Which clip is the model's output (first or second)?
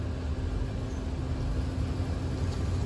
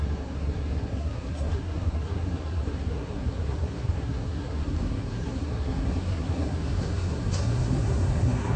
second